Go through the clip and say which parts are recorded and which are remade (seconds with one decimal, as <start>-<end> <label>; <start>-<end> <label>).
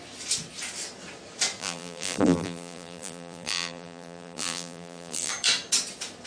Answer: 0.0-1.6 recorded; 1.6-5.3 remade; 5.3-6.3 recorded